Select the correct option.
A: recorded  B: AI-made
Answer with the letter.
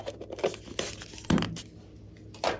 A